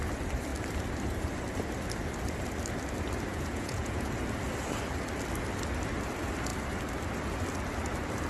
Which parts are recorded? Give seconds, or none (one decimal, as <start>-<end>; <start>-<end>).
0.0-3.3; 4.1-8.3